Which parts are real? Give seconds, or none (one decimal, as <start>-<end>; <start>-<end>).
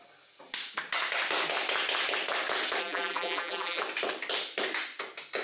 0.0-2.8; 3.8-5.4